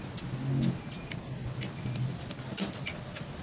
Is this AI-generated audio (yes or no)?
no